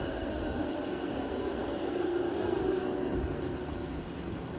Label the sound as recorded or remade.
remade